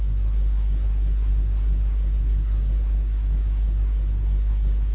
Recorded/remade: remade